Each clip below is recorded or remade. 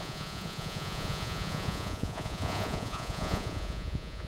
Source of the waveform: remade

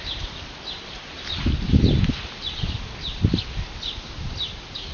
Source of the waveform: recorded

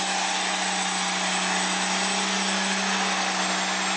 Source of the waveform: recorded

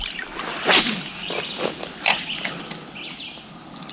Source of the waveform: recorded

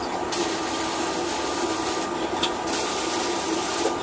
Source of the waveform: recorded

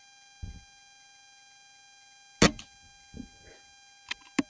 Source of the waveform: recorded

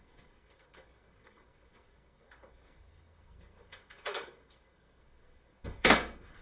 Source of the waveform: remade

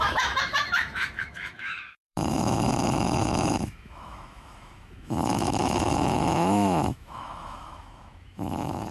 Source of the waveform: remade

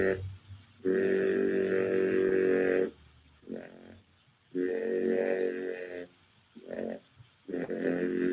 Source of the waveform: recorded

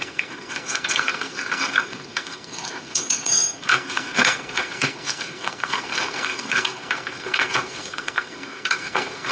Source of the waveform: remade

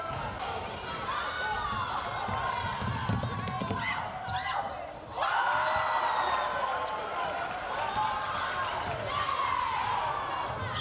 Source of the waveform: recorded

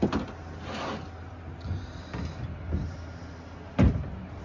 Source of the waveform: recorded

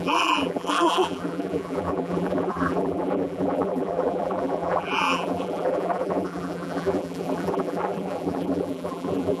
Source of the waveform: remade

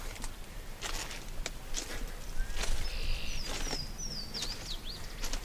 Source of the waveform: recorded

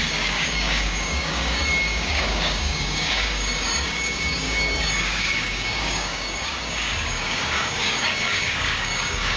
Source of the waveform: remade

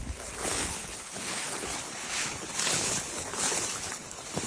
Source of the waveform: remade